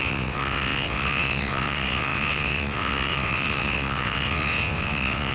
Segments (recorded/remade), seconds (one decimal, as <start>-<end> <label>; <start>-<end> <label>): 0.0-5.3 remade